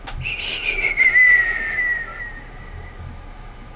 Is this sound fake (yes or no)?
no